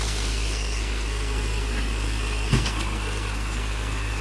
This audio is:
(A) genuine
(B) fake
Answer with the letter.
B